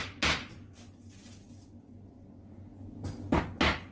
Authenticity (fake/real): real